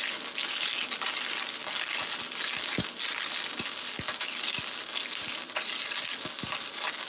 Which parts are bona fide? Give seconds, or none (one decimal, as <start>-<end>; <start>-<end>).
0.0-7.1